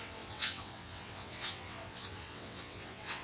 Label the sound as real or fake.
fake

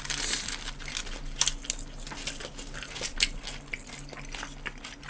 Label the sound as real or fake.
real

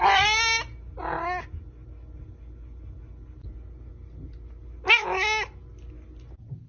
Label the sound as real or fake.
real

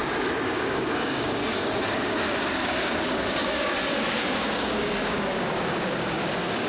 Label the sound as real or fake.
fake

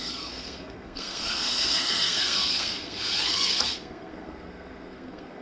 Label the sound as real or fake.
fake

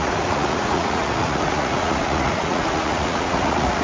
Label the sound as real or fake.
fake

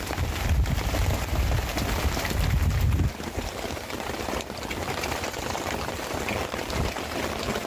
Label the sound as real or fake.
real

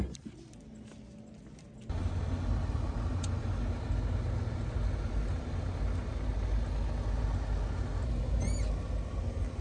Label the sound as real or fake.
real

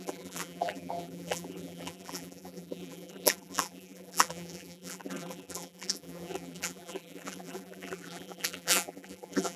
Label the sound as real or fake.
fake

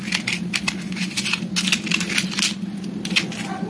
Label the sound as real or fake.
real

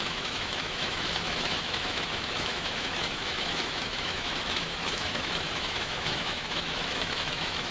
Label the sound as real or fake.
fake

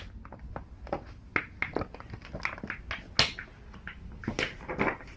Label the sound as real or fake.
real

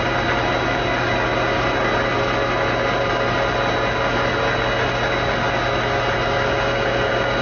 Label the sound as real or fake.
real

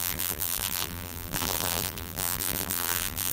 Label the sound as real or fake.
fake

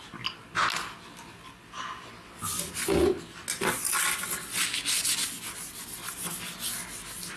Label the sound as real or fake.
real